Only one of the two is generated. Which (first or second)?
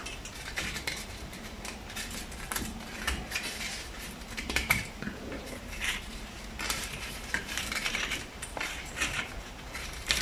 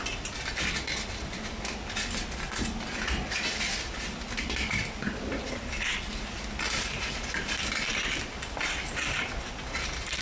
first